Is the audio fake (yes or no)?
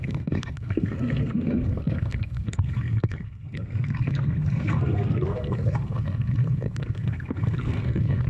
yes